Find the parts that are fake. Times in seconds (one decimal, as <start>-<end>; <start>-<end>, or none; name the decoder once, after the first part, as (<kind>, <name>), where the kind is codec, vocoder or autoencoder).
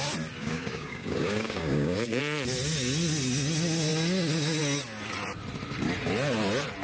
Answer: 0.4-2.2 (codec, DAC)